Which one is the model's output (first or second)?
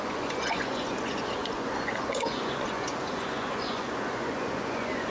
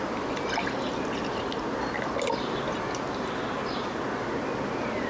first